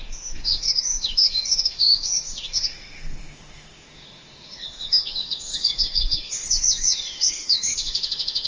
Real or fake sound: fake